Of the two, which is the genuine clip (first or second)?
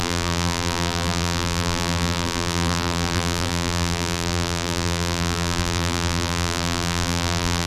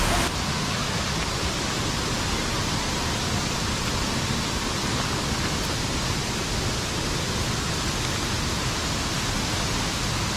second